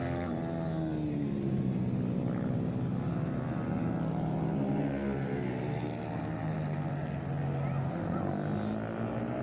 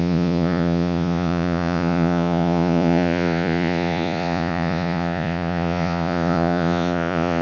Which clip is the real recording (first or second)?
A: first